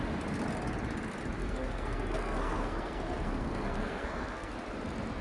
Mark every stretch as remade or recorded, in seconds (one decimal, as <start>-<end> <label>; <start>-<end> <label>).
0.0-1.4 recorded; 1.4-4.5 remade; 4.5-5.2 recorded